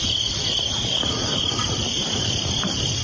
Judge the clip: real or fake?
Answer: real